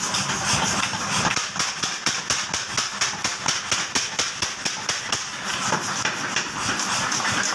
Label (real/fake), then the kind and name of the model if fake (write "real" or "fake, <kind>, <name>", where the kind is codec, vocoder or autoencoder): real